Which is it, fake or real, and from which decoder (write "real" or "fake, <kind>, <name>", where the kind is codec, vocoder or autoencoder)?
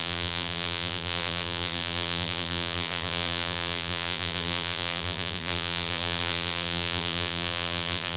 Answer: fake, vocoder, BigVGAN v2